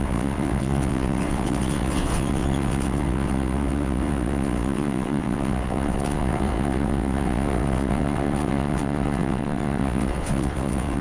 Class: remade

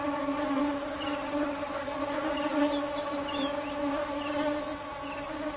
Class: recorded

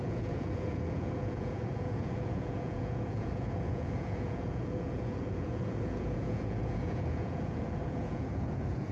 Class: remade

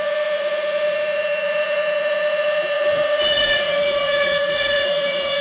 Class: remade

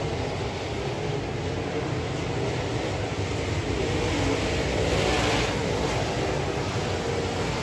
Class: recorded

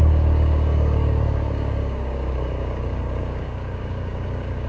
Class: remade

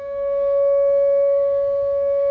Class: remade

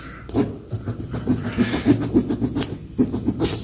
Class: recorded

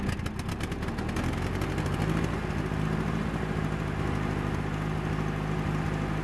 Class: recorded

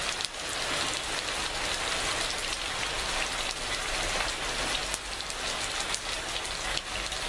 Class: recorded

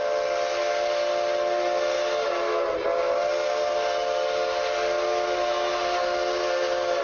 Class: recorded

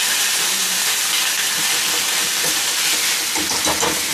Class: recorded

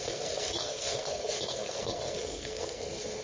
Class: remade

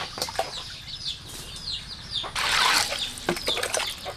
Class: recorded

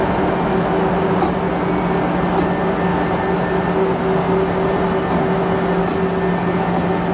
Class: recorded